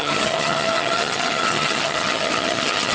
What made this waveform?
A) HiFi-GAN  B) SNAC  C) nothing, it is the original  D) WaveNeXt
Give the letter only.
A